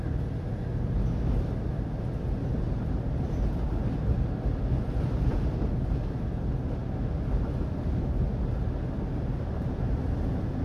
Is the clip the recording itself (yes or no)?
yes